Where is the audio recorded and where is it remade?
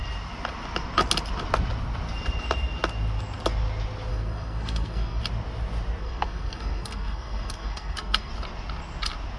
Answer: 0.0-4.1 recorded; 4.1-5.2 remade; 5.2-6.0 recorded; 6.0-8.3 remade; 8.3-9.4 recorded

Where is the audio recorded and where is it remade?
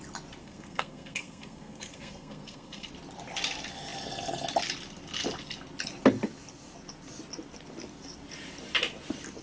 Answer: 0.0-0.4 recorded; 0.4-2.9 remade; 2.9-9.4 recorded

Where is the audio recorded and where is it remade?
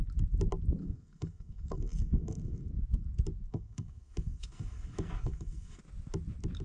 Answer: 0.0-0.8 recorded; 0.8-2.7 remade; 2.7-3.5 recorded; 3.5-5.8 remade; 5.8-6.6 recorded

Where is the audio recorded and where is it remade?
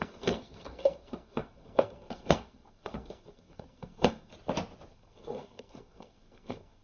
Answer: 0.0-4.3 remade; 4.3-4.9 recorded; 4.9-6.8 remade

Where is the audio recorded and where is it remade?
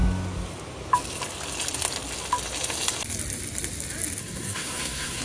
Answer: 0.0-4.2 recorded; 4.2-5.2 remade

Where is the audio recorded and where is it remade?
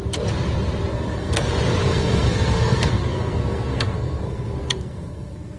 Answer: 0.0-0.9 recorded; 0.9-1.5 remade; 1.5-1.9 recorded; 1.9-5.6 remade